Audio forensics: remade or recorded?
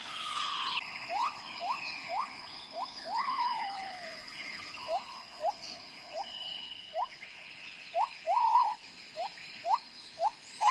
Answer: remade